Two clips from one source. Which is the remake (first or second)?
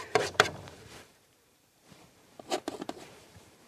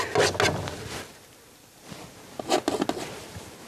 first